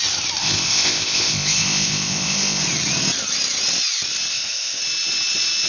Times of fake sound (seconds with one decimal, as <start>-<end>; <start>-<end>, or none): 0.4-2.6; 4.3-4.8